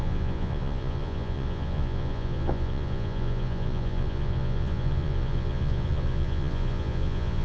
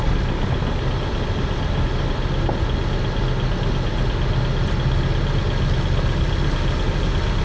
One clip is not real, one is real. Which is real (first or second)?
second